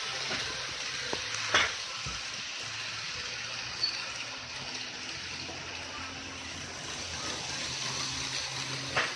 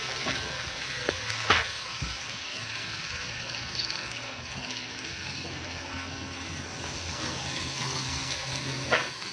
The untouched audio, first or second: first